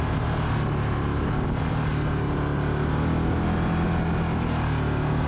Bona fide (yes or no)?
yes